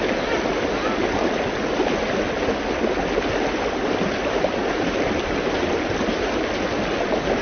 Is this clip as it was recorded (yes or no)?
yes